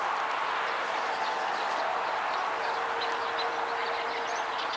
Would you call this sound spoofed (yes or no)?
no